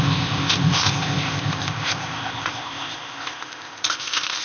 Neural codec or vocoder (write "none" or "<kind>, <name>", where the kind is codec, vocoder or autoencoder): codec, ZipCodec